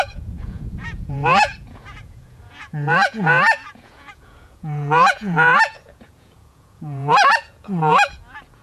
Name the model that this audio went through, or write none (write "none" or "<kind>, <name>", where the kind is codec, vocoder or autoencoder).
vocoder, Vocos